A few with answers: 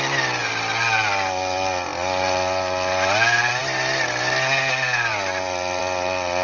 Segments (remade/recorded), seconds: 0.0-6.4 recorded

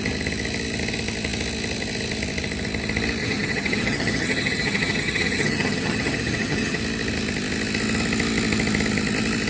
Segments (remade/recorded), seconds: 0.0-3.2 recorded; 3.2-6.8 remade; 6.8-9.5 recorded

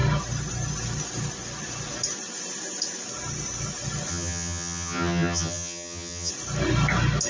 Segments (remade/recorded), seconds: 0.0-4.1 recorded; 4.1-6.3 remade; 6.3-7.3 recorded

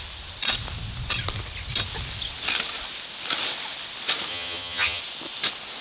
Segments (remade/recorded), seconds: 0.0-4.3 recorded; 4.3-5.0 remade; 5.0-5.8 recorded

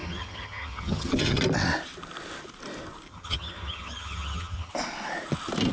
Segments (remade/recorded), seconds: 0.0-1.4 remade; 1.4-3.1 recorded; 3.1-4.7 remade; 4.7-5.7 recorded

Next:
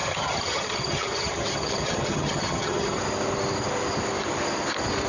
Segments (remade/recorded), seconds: 0.0-3.0 remade; 3.0-5.1 recorded

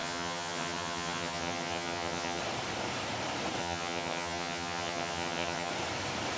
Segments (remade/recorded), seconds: 0.0-2.4 remade; 2.4-3.6 recorded; 3.6-5.7 remade; 5.7-6.4 recorded